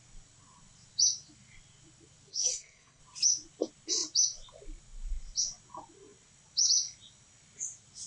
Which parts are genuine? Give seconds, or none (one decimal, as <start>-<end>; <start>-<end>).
0.0-2.3; 3.0-8.1